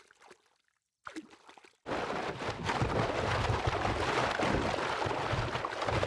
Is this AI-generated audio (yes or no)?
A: no